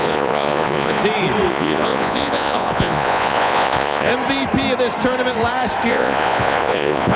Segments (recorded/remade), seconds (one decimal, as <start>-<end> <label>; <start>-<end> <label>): 0.0-1.0 remade; 1.0-1.5 recorded; 1.5-4.1 remade; 4.1-5.9 recorded; 5.9-7.2 remade